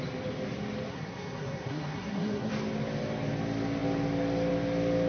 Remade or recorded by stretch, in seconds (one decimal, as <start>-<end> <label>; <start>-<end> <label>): 0.0-0.9 recorded; 0.9-2.5 remade; 2.5-5.1 recorded